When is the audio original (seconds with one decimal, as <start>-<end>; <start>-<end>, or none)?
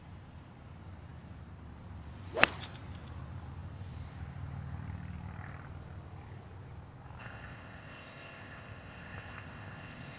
0.0-7.2